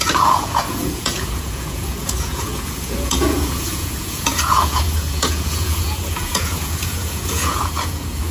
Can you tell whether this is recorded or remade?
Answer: remade